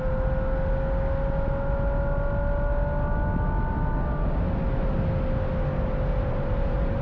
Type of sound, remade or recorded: recorded